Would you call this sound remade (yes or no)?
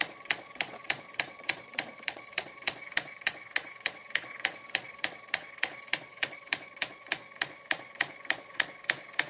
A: yes